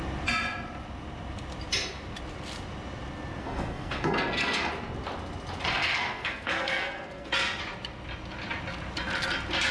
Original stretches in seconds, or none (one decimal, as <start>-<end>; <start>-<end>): 0.0-3.4; 4.7-5.7; 7.3-9.7